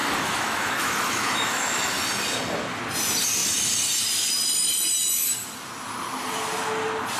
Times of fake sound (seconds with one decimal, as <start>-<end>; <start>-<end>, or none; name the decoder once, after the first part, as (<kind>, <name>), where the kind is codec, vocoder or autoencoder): 0.0-2.0 (autoencoder, DAC-VAE)